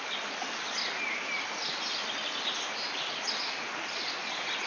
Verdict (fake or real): real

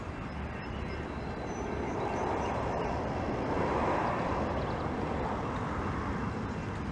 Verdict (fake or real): fake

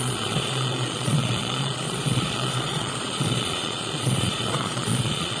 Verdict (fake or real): fake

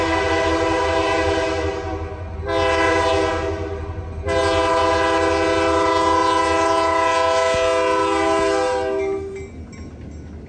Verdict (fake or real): real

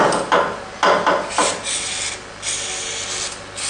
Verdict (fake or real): real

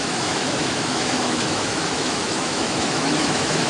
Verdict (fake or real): fake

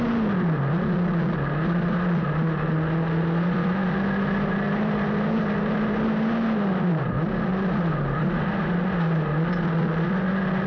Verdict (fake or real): real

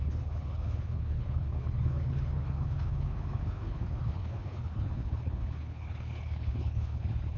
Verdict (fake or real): fake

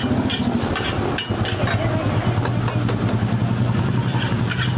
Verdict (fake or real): real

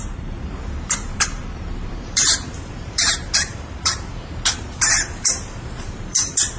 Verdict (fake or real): fake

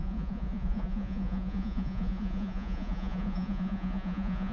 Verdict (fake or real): fake